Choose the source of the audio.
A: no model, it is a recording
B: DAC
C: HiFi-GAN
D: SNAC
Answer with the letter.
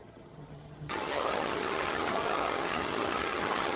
C